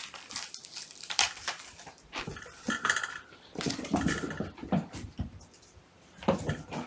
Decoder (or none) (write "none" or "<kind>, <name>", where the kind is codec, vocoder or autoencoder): vocoder, BigVGAN v2